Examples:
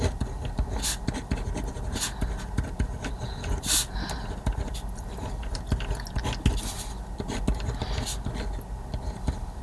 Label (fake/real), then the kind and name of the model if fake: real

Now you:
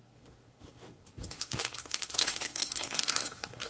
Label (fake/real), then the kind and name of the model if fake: fake, codec, SNAC